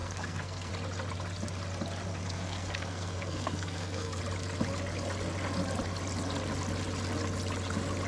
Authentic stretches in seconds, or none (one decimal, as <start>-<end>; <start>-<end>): 0.7-2.1; 4.2-8.1